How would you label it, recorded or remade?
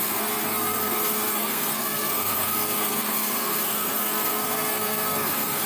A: remade